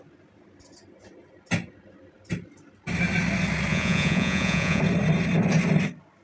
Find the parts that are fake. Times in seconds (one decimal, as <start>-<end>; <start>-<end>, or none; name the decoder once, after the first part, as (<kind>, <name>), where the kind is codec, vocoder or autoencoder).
3.7-4.8 (vocoder, Vocos)